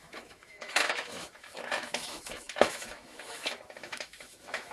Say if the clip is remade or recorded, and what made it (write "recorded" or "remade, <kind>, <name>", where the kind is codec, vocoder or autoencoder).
remade, autoencoder, DAC-VAE